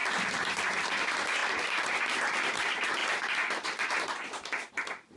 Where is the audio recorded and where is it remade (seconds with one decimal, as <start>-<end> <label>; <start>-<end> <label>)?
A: 0.0-1.4 remade; 1.4-2.1 recorded; 2.1-3.0 remade; 3.0-4.7 recorded; 4.7-5.2 remade